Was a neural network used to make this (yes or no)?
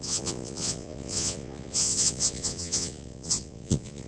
yes